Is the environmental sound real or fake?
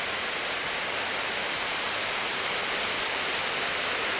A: real